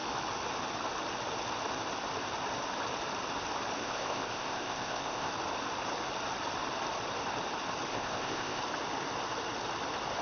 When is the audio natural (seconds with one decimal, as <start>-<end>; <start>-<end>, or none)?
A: 0.0-3.8; 5.3-7.9; 8.6-10.2